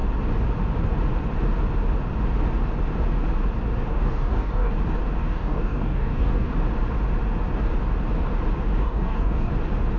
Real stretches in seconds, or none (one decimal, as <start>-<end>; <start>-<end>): 0.0-3.9; 4.7-5.2; 6.5-8.8; 9.5-10.0